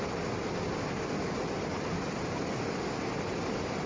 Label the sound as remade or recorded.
recorded